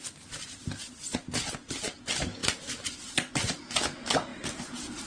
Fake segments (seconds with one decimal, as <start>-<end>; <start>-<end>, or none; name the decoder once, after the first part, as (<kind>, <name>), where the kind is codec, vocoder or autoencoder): 4.3-5.1 (vocoder, BigVGAN v2)